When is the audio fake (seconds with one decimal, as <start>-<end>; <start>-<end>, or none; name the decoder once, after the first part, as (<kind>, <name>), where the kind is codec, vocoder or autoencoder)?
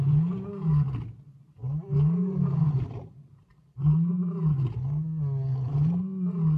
none